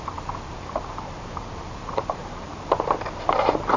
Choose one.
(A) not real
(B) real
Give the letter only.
A